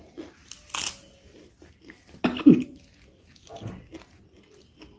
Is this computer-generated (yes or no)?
no